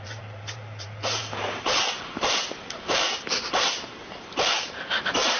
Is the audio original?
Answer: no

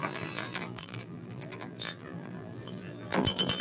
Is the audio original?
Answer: no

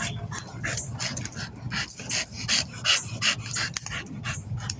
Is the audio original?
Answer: yes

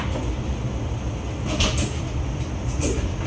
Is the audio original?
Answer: no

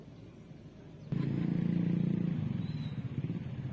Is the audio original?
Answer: yes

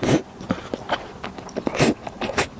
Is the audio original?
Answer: yes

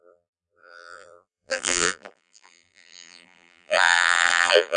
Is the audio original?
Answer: no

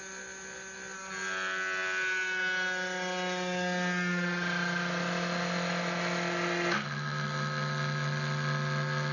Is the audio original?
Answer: yes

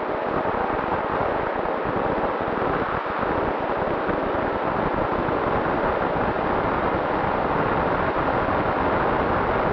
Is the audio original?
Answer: yes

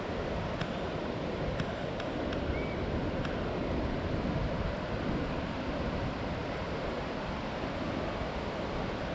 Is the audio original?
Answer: no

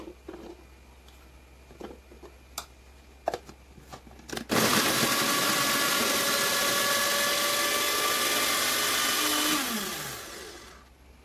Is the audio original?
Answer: yes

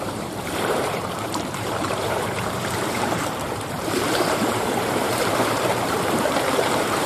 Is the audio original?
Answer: no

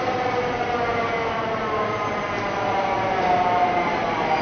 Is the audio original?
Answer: yes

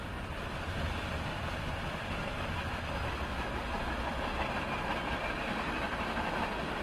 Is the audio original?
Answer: yes